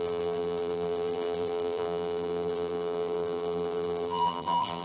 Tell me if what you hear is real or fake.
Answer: fake